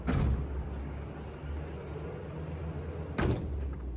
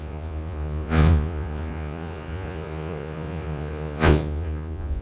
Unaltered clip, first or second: first